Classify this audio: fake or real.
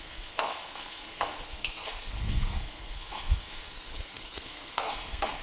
fake